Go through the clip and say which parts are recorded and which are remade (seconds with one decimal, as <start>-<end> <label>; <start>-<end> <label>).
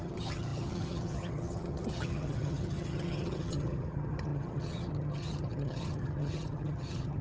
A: 0.0-7.2 remade